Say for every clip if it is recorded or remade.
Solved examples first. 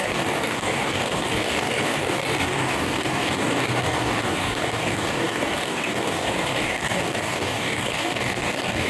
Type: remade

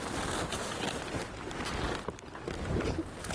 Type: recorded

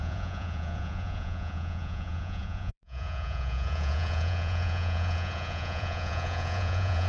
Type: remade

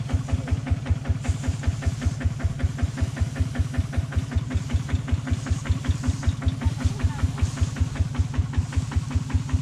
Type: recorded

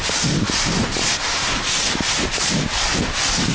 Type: recorded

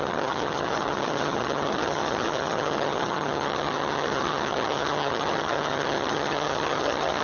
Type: remade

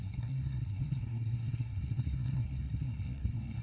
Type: remade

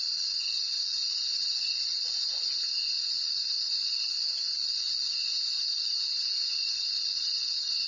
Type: recorded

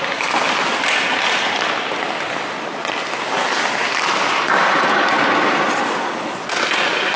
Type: recorded